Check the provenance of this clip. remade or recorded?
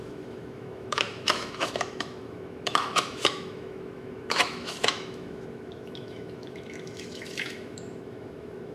remade